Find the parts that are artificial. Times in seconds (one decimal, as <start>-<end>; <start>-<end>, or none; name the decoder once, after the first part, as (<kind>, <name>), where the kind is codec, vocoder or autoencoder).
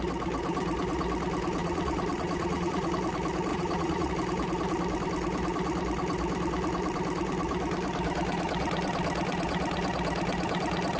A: 1.6-2.9 (vocoder, Vocos); 3.5-4.1